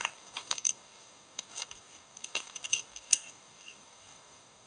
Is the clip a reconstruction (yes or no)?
yes